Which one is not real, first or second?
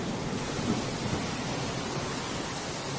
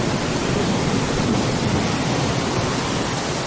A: second